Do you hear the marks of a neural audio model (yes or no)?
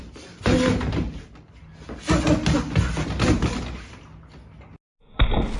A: no